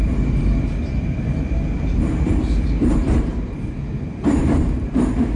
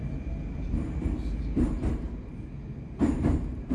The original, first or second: second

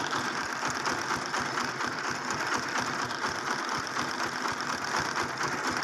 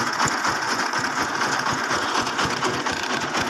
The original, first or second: first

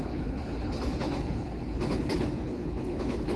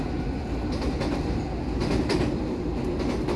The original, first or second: second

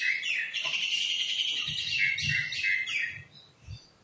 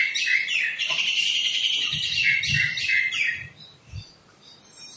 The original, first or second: first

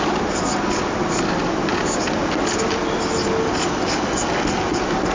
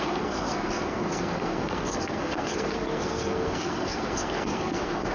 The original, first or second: first